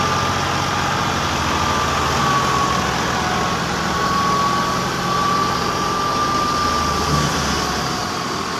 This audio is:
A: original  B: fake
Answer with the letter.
A